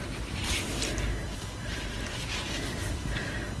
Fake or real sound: real